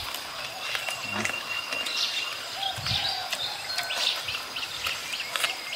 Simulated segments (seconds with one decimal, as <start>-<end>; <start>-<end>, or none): 3.2-3.7